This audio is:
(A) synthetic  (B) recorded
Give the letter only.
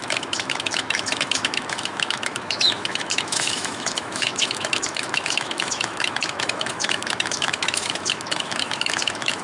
A